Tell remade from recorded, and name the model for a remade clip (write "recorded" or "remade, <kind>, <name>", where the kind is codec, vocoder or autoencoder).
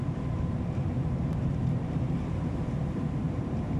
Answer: remade, vocoder, BigVGAN v2